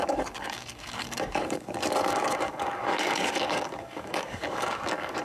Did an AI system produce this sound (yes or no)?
yes